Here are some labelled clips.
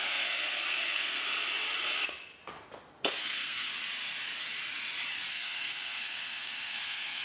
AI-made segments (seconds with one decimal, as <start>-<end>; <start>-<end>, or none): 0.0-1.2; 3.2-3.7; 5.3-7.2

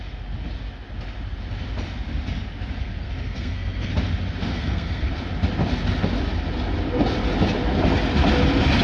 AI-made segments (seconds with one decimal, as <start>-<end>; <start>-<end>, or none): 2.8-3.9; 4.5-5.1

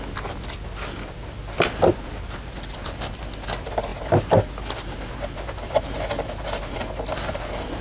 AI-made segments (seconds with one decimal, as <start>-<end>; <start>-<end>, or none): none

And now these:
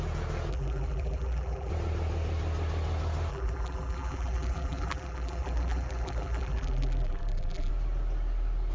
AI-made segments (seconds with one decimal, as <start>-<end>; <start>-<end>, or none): 0.5-1.7; 3.3-7.7

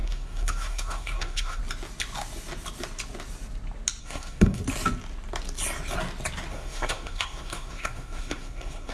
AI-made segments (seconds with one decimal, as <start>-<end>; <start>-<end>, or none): 0.0-1.6; 4.0-4.6; 6.5-8.9